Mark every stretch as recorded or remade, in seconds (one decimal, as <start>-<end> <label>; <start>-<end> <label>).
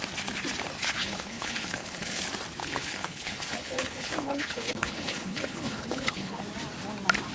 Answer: 0.0-1.0 recorded; 1.0-2.2 remade; 2.2-2.6 recorded; 2.6-6.4 remade; 6.4-7.3 recorded